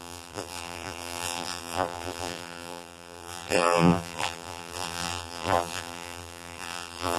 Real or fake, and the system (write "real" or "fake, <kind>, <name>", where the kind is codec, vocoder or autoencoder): fake, vocoder, BigVGAN v2